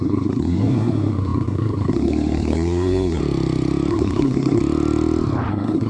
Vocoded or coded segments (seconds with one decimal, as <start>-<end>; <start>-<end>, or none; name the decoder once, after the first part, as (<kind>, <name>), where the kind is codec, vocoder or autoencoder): 0.0-3.2 (codec, SNAC); 3.9-4.6; 5.5-5.9